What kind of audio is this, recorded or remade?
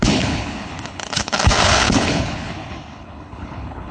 remade